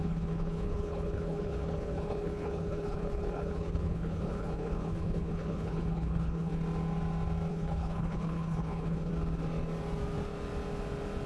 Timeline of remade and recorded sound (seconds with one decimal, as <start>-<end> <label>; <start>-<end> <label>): 0.0-6.5 remade; 6.5-7.5 recorded; 7.5-9.1 remade; 9.1-11.3 recorded